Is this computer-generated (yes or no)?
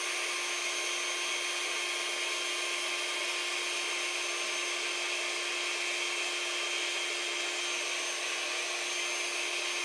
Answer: no